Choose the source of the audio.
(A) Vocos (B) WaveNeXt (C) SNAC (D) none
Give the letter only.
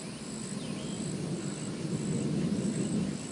D